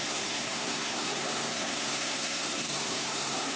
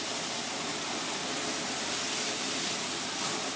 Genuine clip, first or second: second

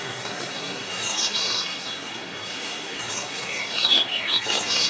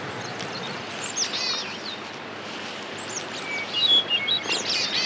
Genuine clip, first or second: second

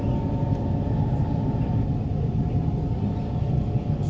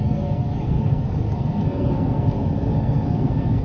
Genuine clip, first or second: first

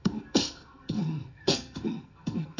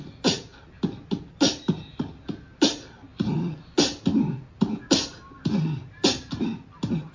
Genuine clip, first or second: second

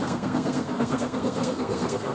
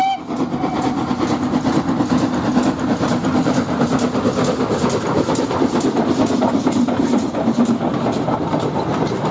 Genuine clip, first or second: second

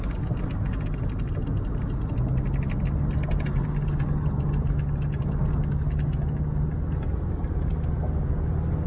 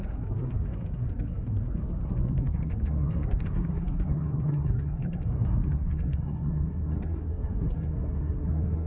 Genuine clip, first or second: first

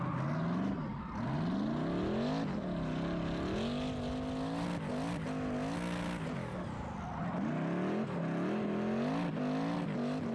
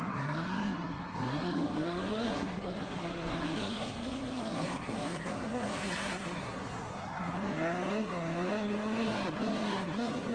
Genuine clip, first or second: first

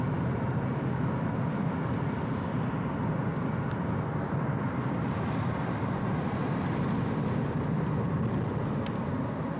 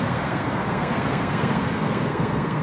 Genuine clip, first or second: first